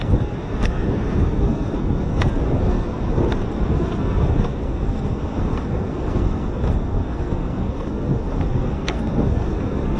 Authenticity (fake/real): fake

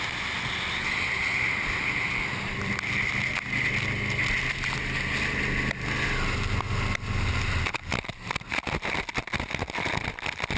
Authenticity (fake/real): real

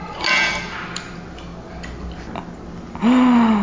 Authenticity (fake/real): real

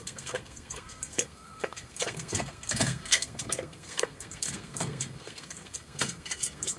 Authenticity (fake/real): fake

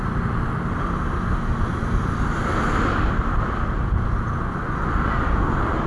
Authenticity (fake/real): real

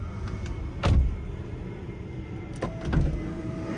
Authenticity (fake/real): real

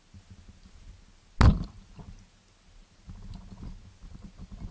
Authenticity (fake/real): real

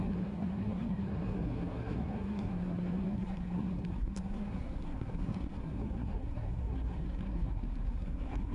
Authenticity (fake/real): fake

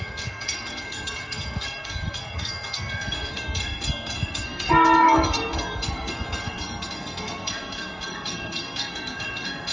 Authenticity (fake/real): fake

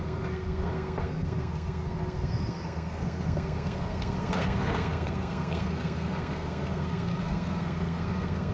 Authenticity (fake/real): fake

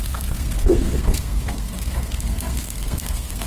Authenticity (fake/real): fake